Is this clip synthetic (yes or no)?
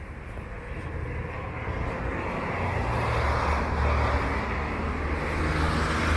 no